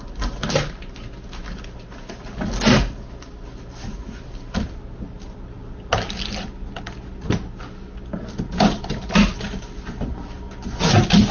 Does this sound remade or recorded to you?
recorded